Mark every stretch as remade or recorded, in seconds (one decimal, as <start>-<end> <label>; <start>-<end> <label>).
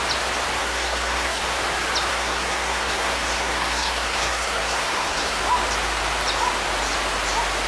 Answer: 0.0-0.6 recorded; 0.6-1.4 remade; 1.4-2.1 recorded; 2.1-5.4 remade; 5.4-7.7 recorded